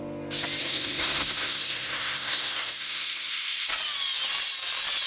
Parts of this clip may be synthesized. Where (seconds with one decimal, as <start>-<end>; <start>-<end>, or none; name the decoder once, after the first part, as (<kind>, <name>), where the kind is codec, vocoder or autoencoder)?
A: 0.6-3.7 (codec, SNAC)